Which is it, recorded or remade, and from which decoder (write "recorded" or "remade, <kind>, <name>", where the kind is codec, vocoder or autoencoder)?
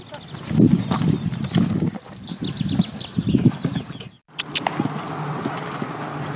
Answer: recorded